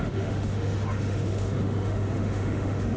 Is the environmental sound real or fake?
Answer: fake